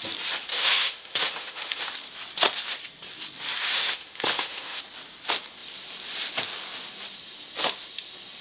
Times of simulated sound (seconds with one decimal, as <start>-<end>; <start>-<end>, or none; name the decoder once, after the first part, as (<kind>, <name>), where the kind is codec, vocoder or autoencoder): 0.5-1.9 (autoencoder, DAC-VAE); 3.7-4.8